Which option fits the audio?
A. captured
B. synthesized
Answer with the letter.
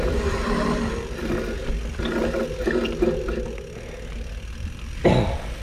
A